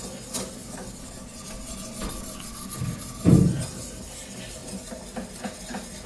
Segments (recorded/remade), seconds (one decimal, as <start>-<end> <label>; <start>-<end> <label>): 0.0-6.1 recorded

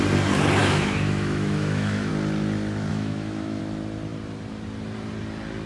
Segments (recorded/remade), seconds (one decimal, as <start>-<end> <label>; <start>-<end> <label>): 0.0-0.6 recorded; 0.6-2.1 remade; 2.1-2.9 recorded; 2.9-3.6 remade; 3.6-5.7 recorded

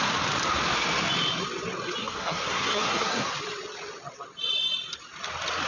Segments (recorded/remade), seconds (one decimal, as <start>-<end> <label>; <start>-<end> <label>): 0.0-2.0 recorded; 2.0-3.3 remade; 3.3-5.7 recorded

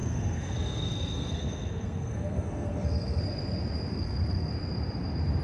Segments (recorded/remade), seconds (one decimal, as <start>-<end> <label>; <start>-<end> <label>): 0.0-3.2 remade; 3.2-3.9 recorded; 3.9-4.5 remade; 4.5-5.4 recorded

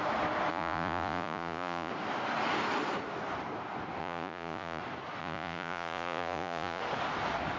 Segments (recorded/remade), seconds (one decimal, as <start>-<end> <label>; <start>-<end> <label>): 0.0-0.5 recorded; 0.5-1.9 remade; 1.9-4.0 recorded; 4.0-4.8 remade; 4.8-5.2 recorded; 5.2-6.8 remade; 6.8-7.6 recorded